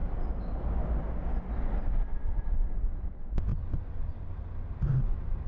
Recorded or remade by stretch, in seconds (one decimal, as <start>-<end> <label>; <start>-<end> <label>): 0.0-5.5 recorded